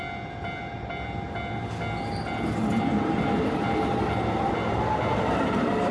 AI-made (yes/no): no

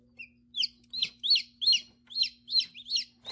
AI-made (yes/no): no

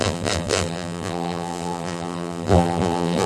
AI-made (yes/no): yes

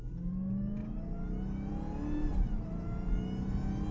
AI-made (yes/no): no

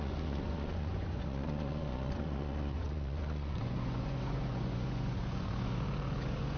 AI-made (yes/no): yes